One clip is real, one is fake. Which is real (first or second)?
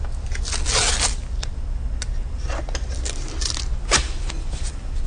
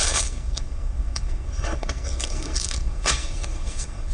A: first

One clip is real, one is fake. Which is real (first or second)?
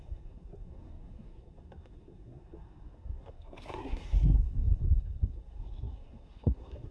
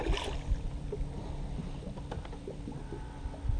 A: second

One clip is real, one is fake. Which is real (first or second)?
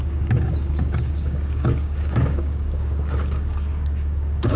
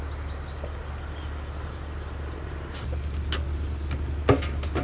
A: second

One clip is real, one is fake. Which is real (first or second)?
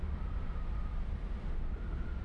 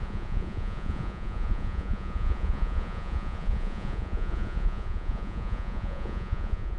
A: first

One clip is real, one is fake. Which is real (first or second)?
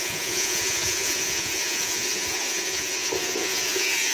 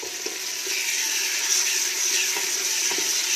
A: second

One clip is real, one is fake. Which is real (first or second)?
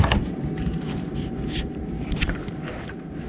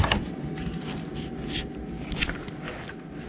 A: second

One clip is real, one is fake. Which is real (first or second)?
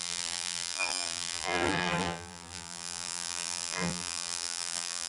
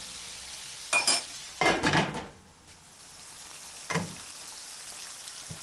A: second